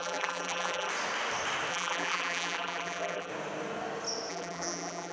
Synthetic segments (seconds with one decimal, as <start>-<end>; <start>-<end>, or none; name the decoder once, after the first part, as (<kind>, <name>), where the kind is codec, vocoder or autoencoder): 0.0-0.9 (vocoder, BigVGAN v2); 1.7-3.3; 4.3-5.1